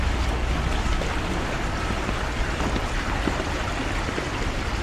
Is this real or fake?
real